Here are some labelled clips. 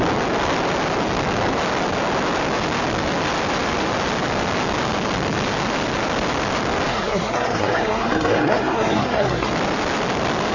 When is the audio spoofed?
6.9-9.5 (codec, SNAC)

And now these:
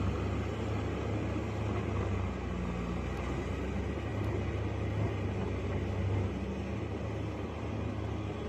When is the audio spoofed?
none

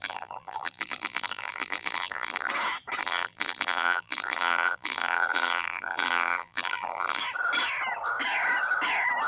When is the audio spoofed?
0.0-2.5 (vocoder, BigVGAN v2); 3.0-7.2